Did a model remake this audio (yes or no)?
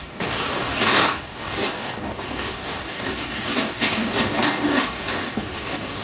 yes